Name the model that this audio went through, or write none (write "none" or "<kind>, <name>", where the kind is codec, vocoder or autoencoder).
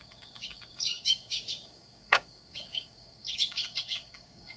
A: codec, DAC